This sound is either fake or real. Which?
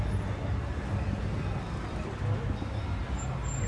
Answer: real